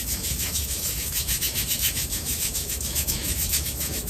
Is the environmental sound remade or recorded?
remade